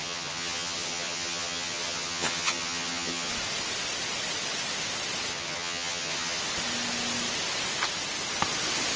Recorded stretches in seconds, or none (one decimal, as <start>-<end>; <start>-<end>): 3.3-5.3; 6.4-9.0